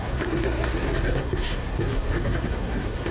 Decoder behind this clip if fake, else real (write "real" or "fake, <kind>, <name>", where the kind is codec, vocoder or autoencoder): fake, codec, SNAC